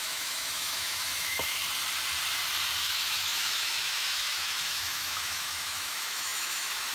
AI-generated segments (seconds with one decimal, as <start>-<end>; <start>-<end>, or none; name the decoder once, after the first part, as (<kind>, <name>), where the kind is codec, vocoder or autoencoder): 0.0-1.6 (autoencoder, DAC-VAE); 2.8-6.9